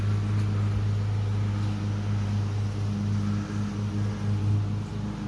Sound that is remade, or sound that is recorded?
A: recorded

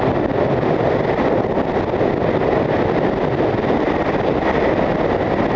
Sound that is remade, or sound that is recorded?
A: recorded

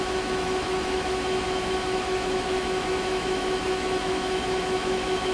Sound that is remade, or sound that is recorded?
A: remade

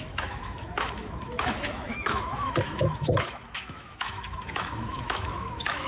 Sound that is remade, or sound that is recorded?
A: remade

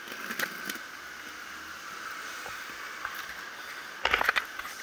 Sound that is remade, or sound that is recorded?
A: recorded